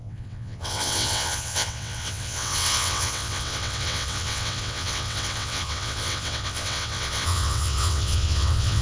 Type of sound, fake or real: fake